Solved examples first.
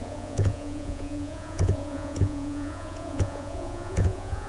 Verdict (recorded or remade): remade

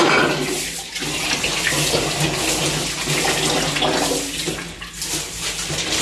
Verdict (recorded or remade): recorded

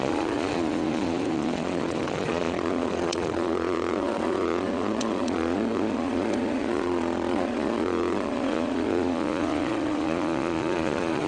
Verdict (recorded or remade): remade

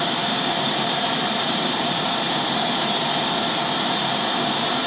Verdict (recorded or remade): remade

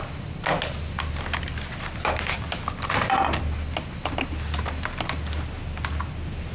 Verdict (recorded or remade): recorded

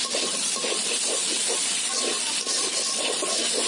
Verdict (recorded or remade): recorded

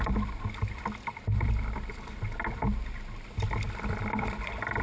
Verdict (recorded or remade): remade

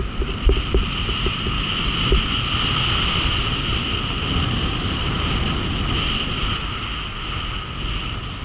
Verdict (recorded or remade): recorded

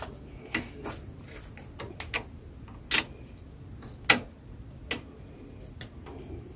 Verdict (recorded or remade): recorded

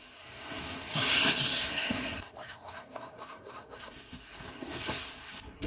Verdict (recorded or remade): remade